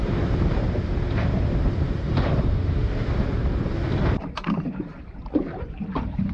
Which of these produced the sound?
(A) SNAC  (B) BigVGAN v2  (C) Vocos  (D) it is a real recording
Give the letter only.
B